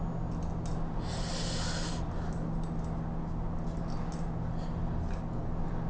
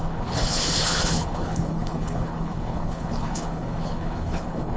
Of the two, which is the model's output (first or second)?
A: second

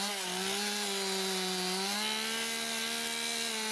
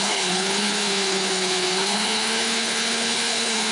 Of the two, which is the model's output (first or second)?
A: second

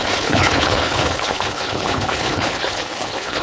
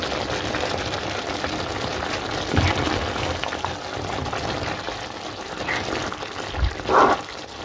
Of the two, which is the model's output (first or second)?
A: first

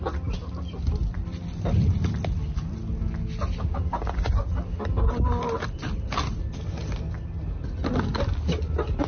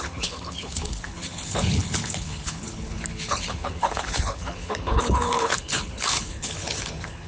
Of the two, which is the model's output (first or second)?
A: second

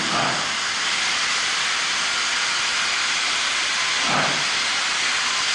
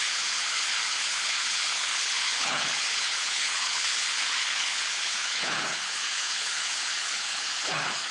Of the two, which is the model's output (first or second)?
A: second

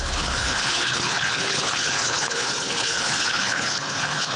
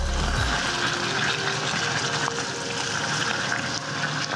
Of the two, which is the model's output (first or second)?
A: first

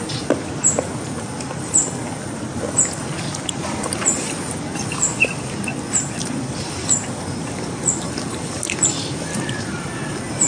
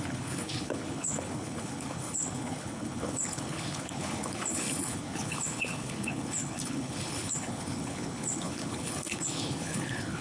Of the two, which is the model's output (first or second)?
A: second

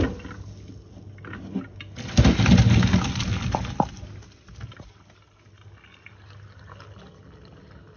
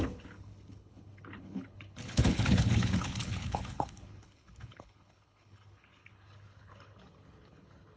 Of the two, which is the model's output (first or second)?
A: second